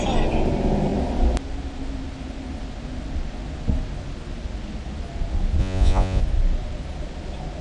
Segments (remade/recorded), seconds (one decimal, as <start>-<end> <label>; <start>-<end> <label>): 0.0-5.6 recorded; 5.6-6.2 remade; 6.2-7.6 recorded